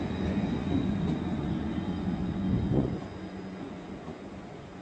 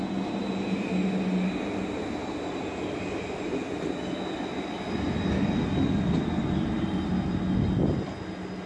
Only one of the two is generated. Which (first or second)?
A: first